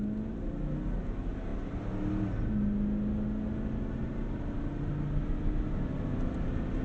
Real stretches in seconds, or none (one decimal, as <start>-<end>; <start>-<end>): 0.0-6.8